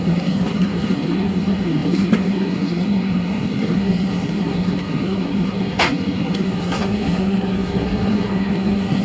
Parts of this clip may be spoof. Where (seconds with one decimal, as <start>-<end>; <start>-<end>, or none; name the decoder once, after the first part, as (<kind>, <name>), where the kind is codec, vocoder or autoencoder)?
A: 0.0-9.0 (codec, SNAC)